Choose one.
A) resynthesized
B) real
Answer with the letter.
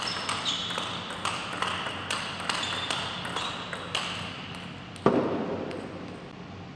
B